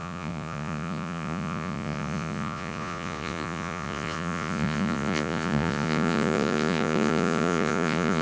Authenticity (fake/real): fake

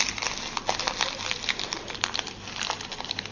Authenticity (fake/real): real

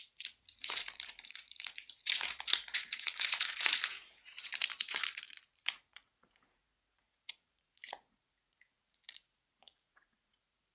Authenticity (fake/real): fake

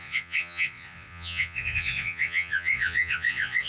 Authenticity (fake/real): fake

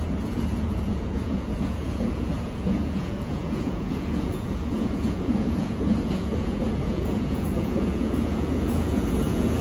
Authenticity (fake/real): fake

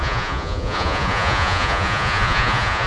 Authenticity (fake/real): fake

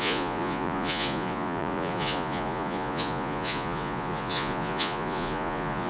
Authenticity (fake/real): fake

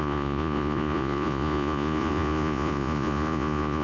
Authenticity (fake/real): fake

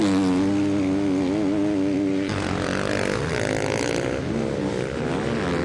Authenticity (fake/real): real